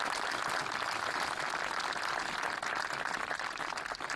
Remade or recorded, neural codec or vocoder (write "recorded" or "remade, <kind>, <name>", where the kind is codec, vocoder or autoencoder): recorded